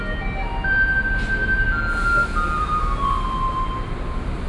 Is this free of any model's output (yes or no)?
yes